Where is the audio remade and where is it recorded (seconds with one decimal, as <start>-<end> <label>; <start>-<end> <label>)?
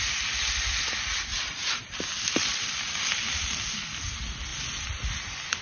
0.0-1.3 recorded; 1.3-2.0 remade; 2.0-2.5 recorded; 2.5-4.1 remade; 4.1-5.6 recorded